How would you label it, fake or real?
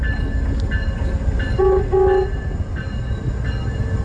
real